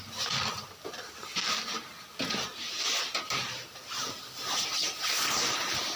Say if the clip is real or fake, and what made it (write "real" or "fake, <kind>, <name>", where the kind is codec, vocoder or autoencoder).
real